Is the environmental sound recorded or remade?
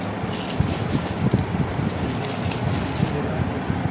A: recorded